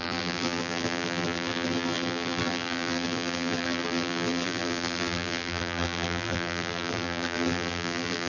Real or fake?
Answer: fake